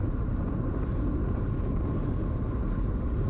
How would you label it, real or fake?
real